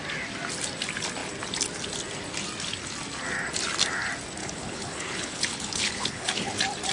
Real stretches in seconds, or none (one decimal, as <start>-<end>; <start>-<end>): 0.0-4.4; 6.5-6.9